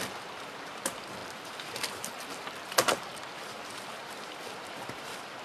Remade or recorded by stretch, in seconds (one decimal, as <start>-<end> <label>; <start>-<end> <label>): 0.0-3.1 remade; 3.1-4.1 recorded; 4.1-5.4 remade